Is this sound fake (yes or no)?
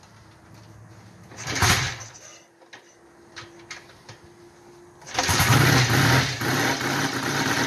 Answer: no